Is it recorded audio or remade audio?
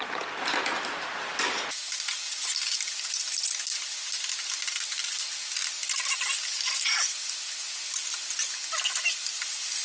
recorded